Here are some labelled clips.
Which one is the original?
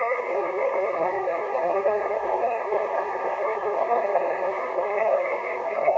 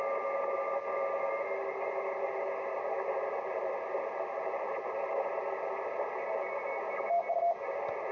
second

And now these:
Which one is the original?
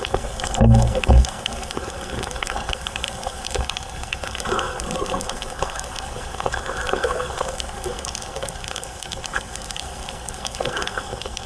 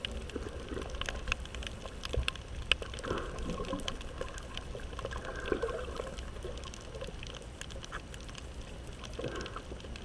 second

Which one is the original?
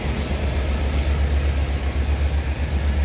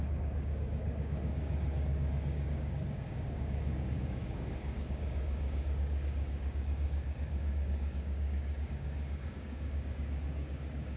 first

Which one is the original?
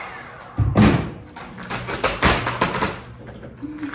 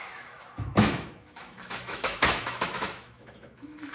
first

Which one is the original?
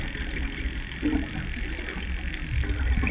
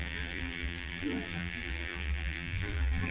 first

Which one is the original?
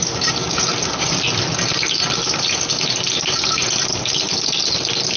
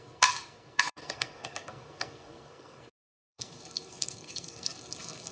first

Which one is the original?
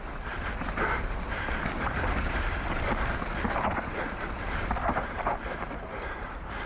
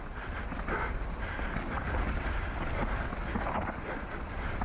second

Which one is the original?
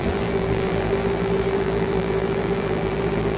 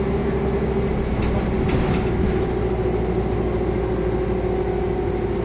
second